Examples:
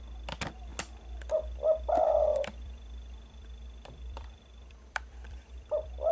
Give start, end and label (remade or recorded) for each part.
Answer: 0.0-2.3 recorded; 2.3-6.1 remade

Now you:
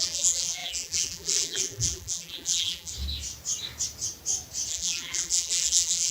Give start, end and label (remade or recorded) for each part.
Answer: 0.0-2.9 remade; 2.9-4.7 recorded; 4.7-6.1 remade